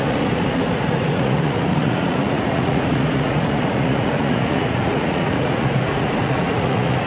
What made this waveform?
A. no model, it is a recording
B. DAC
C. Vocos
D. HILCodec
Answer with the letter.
C